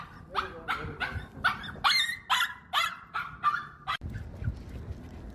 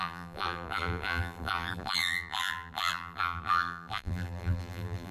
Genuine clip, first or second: first